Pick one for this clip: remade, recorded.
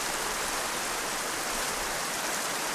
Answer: recorded